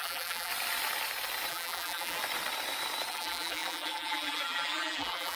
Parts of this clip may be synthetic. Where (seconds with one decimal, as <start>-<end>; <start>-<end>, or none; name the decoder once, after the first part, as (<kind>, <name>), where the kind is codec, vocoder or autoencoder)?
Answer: 0.0-0.5 (vocoder, BigVGAN v2); 1.5-2.2; 3.1-5.4